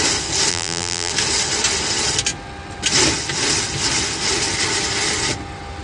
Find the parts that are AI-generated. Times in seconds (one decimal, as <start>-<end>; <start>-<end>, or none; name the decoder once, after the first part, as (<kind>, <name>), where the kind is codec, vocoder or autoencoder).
0.5-1.1 (vocoder, BigVGAN v2)